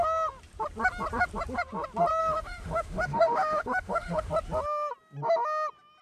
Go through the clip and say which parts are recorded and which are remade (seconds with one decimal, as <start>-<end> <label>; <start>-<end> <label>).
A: 0.0-2.2 recorded; 2.2-4.3 remade; 4.3-6.0 recorded